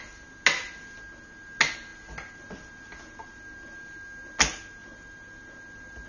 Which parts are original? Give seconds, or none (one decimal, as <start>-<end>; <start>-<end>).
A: 0.0-6.1